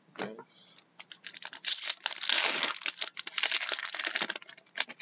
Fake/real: real